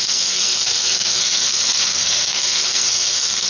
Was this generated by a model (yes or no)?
yes